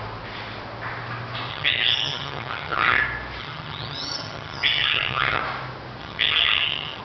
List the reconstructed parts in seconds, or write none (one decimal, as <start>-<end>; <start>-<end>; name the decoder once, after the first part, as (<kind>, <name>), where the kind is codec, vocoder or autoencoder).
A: 1.5-3.0 (vocoder, HiFi-GAN); 3.4-5.4; 6.0-7.0